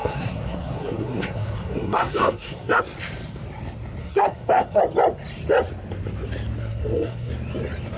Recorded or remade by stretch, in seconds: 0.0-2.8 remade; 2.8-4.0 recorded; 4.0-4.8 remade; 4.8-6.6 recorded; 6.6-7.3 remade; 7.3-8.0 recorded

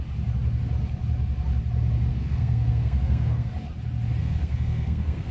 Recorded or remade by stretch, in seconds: 0.0-2.1 recorded; 2.1-3.5 remade; 3.5-4.2 recorded; 4.2-5.3 remade

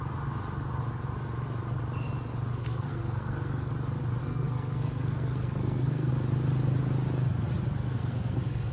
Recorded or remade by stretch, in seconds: 0.0-2.5 recorded; 2.5-3.7 remade; 3.7-4.2 recorded; 4.2-6.1 remade; 6.1-7.9 recorded; 7.9-8.7 remade